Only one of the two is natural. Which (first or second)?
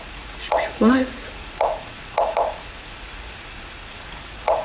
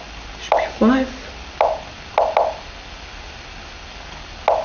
second